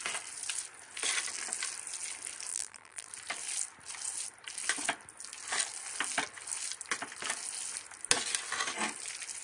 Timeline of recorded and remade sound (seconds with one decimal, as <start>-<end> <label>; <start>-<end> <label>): 0.0-2.5 recorded; 2.5-3.1 remade; 3.1-9.4 recorded